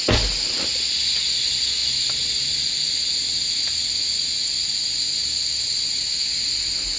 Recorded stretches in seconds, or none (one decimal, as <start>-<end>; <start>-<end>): 0.0-7.0